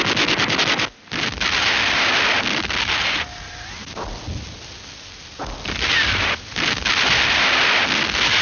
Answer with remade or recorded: recorded